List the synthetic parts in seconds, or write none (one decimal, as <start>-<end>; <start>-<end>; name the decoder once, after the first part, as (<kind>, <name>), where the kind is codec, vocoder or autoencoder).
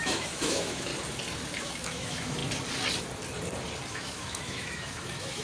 0.0-0.9 (autoencoder, DAC-VAE); 1.6-2.4; 3.9-5.4